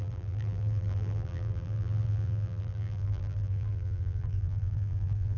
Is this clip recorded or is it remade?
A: remade